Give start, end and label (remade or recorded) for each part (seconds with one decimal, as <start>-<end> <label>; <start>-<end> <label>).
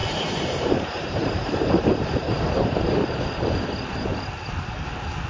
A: 0.0-3.2 remade; 3.2-5.3 recorded